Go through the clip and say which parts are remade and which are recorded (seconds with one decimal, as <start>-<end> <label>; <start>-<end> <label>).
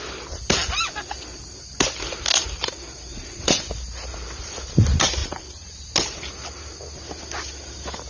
0.0-3.1 recorded; 3.1-3.6 remade; 3.6-5.2 recorded; 5.2-5.7 remade; 5.7-8.1 recorded